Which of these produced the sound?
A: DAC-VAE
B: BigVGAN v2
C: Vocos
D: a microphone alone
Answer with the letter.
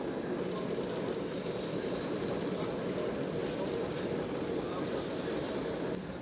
D